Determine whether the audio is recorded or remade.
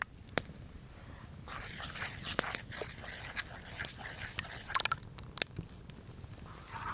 recorded